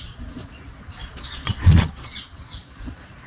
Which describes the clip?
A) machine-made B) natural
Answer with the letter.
A